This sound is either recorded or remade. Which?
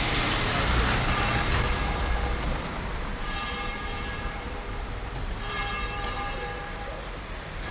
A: remade